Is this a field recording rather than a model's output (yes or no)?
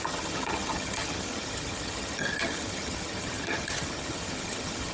no